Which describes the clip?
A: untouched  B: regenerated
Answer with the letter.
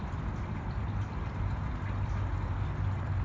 A